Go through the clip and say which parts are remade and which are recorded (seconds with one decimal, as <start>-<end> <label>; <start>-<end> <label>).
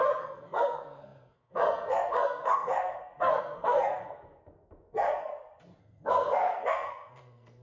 0.0-5.3 remade; 5.3-5.8 recorded; 5.8-7.6 remade